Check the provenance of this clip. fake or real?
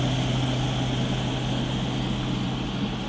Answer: real